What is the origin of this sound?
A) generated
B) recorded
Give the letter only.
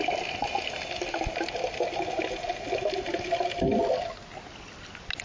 B